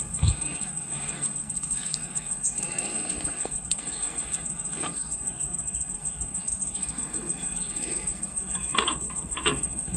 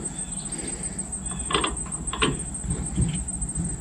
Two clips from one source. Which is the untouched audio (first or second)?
second